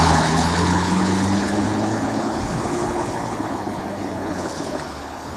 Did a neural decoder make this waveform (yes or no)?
yes